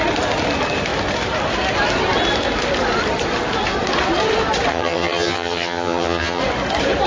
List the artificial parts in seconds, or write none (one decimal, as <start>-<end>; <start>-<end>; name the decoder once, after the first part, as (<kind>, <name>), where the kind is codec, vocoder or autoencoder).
4.7-6.4 (vocoder, HiFi-GAN)